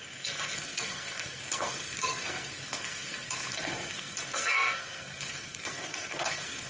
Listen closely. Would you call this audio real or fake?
fake